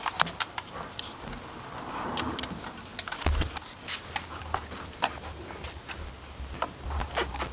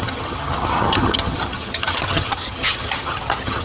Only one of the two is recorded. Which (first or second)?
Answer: first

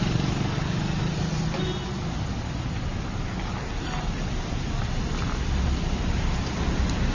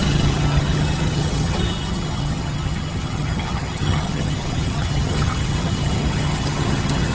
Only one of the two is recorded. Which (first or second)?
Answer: first